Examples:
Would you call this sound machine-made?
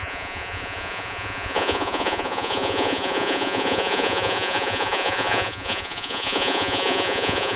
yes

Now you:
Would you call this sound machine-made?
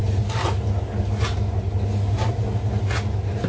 no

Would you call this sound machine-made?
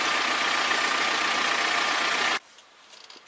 no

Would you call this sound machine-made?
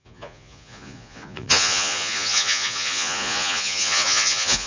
yes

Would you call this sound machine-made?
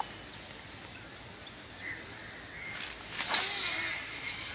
no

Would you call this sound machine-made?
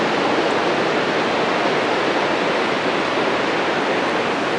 no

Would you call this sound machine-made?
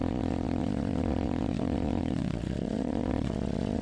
yes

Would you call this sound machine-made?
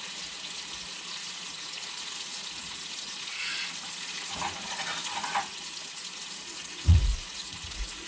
yes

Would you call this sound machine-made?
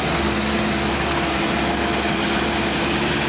no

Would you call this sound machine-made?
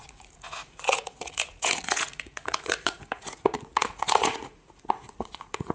yes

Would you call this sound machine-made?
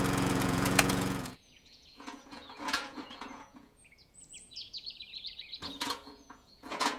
yes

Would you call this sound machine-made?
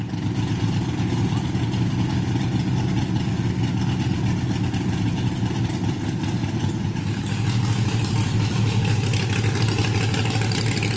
no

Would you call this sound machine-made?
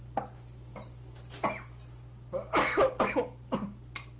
no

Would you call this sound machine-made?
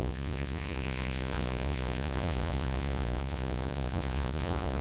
yes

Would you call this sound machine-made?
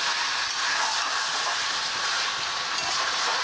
no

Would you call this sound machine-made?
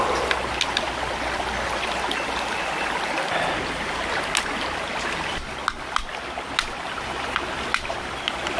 no